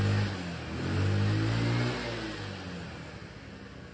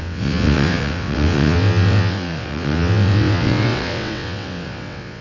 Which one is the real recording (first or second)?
first